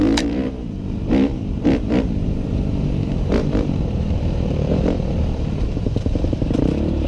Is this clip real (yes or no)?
no